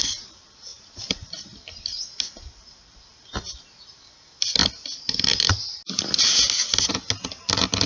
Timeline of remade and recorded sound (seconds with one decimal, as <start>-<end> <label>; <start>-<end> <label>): 0.0-0.7 recorded; 0.7-2.0 remade; 2.0-4.6 recorded; 4.6-5.9 remade; 5.9-7.9 recorded